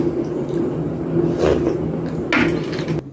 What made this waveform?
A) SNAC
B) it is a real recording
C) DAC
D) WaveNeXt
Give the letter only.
B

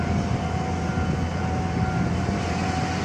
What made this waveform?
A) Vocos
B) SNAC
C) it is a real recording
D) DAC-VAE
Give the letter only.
C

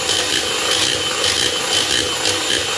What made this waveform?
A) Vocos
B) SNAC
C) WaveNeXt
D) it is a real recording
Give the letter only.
D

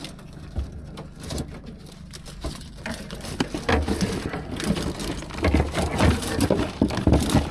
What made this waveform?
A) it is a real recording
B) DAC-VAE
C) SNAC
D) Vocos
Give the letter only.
A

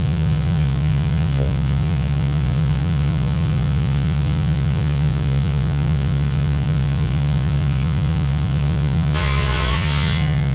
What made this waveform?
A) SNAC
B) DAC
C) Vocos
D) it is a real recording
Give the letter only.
C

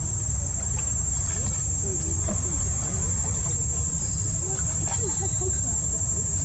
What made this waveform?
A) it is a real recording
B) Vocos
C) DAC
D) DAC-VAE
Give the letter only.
A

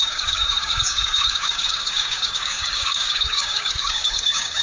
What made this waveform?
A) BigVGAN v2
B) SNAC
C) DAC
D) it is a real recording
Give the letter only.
C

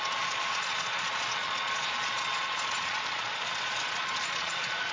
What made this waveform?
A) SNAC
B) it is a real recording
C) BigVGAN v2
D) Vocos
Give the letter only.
D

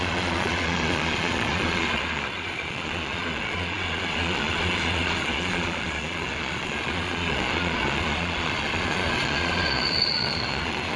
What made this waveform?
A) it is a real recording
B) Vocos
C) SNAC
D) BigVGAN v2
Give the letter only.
B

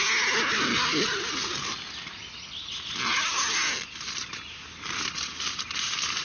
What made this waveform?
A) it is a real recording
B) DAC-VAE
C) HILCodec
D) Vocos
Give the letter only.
A